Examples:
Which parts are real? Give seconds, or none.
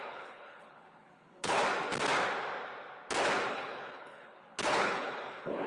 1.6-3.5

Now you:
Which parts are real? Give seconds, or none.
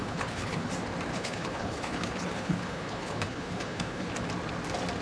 0.7-1.1; 4.1-5.0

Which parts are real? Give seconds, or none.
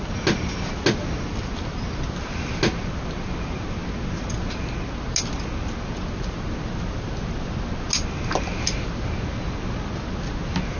0.0-10.8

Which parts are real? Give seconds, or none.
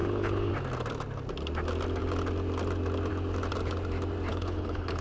0.5-4.3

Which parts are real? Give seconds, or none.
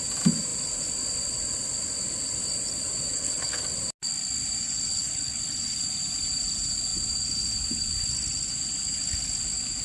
0.0-3.1; 3.6-4.9; 5.4-9.8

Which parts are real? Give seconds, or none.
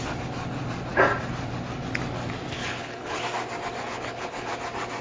0.0-2.6; 3.2-3.8; 4.5-5.0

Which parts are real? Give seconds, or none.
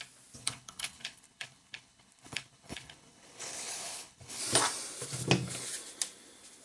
0.0-0.4; 4.4-6.6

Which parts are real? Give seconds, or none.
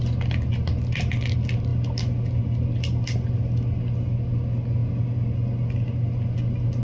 0.0-6.8